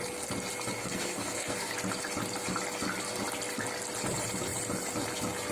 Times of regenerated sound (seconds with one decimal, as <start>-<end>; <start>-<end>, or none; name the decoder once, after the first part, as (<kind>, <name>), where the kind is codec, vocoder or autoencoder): 0.8-1.7 (codec, SNAC)